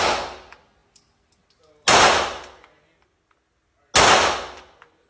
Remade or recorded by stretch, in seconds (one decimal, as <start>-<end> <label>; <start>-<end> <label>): 0.0-5.1 recorded